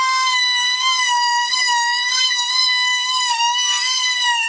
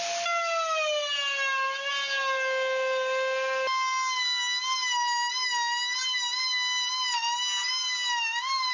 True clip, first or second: second